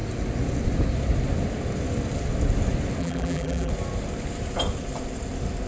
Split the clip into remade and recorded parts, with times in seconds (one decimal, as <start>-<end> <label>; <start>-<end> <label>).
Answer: 0.0-3.0 recorded; 3.0-3.7 remade; 3.7-5.7 recorded